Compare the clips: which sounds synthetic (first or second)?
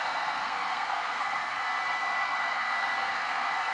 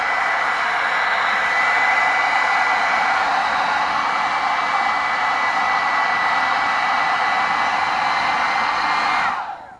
first